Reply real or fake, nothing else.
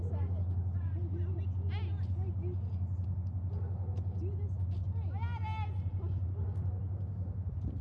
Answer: real